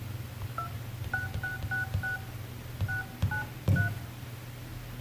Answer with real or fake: fake